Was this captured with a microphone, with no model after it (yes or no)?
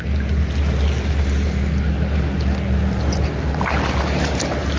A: yes